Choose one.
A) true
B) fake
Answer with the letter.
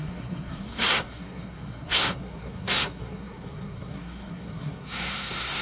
B